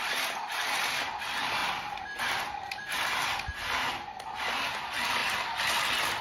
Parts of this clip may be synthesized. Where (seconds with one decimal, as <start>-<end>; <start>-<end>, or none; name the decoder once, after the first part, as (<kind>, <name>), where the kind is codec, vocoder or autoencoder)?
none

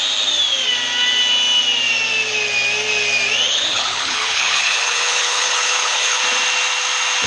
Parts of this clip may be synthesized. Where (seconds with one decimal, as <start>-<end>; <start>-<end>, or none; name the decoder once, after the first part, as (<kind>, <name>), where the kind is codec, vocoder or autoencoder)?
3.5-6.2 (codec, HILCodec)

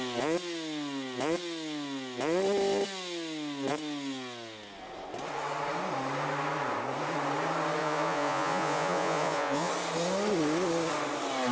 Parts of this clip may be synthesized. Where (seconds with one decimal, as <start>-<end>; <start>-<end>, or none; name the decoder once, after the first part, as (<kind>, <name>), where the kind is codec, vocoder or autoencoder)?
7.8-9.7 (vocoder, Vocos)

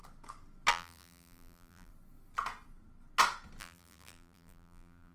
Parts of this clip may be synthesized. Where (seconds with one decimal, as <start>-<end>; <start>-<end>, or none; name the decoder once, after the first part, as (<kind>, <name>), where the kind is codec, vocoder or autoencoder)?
0.7-1.9 (vocoder, BigVGAN v2); 3.6-5.1

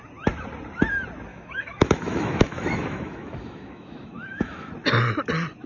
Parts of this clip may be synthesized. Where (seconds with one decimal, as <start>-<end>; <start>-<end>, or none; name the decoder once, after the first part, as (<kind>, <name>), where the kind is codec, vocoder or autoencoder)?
1.3-4.7 (autoencoder, DAC-VAE)

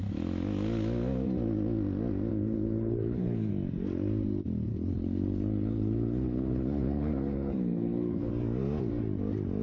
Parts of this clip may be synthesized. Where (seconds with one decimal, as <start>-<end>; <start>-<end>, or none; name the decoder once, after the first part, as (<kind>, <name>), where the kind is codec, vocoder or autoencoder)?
2.3-3.5 (codec, HILCodec); 4.7-8.3

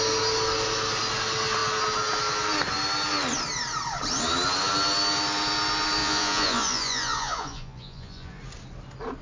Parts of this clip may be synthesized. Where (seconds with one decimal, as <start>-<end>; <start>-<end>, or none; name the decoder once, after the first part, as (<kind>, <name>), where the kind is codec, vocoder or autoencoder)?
6.0-8.4 (vocoder, Vocos)